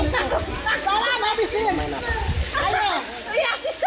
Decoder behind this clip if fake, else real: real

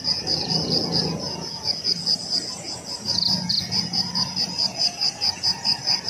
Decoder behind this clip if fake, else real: fake, vocoder, Vocos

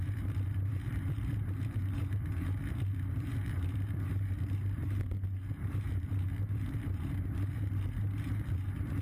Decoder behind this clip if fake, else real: fake, vocoder, BigVGAN v2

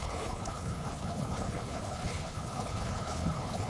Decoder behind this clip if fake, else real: fake, codec, HILCodec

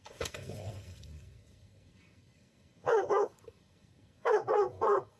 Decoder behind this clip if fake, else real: fake, codec, SNAC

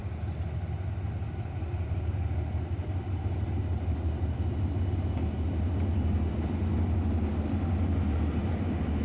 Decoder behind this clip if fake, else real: real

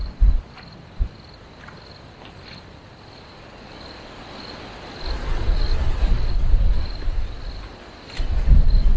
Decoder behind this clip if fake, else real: real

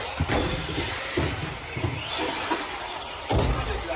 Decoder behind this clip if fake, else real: real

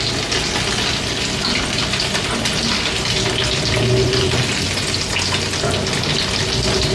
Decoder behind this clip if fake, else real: real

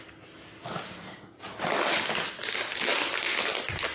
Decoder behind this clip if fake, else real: real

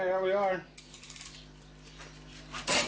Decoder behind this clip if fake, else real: real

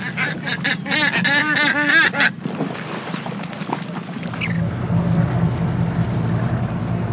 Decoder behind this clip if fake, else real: real